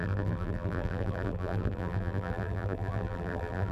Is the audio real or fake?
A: fake